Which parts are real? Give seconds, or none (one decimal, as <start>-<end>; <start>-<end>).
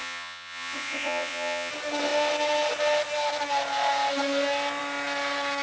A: 1.7-5.6